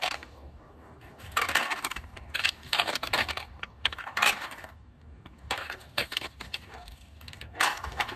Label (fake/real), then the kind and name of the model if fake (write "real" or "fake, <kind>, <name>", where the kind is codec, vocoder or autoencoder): fake, codec, DAC